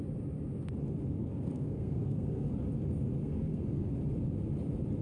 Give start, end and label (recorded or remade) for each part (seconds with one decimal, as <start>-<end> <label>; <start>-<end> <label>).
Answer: 0.0-1.2 recorded; 1.2-2.5 remade; 2.5-3.2 recorded; 3.2-3.9 remade; 3.9-5.0 recorded

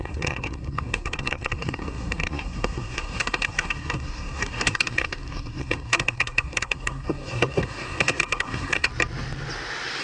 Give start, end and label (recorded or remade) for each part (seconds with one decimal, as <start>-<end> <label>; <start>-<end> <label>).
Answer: 0.0-8.9 remade; 8.9-10.0 recorded

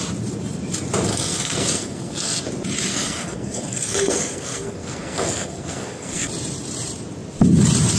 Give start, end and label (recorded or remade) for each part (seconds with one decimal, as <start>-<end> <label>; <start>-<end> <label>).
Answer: 0.0-1.1 recorded; 1.1-2.4 remade; 2.4-2.9 recorded; 2.9-6.3 remade; 6.3-8.0 recorded

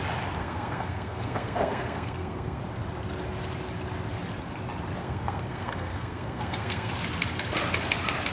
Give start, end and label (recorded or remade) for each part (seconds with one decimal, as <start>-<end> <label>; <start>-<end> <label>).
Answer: 0.0-0.4 recorded; 0.4-2.6 remade; 2.6-5.0 recorded; 5.0-6.9 remade; 6.9-8.3 recorded

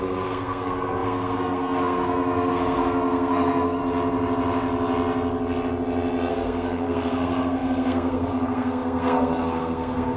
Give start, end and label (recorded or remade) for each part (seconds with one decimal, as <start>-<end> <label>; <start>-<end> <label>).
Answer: 0.0-3.8 remade; 3.8-6.3 recorded; 6.3-10.2 remade

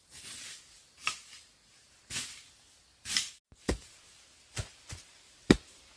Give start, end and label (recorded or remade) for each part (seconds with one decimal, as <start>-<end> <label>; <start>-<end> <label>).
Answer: 0.0-6.0 recorded

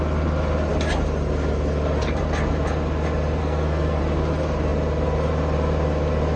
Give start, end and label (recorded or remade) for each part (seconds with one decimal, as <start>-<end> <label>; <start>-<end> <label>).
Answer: 0.0-3.4 recorded; 3.4-4.0 remade; 4.0-6.4 recorded

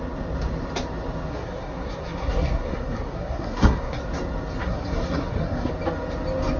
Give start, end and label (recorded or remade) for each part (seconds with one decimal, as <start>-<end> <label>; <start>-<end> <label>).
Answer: 0.0-1.3 recorded; 1.3-4.0 remade; 4.0-4.6 recorded; 4.6-5.7 remade; 5.7-6.6 recorded